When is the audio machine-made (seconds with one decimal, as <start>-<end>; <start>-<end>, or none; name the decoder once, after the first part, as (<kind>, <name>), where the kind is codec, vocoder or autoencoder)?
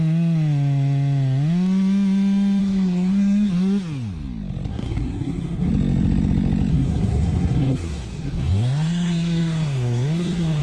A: 2.6-3.5 (codec, SNAC); 4.7-5.7; 6.7-10.6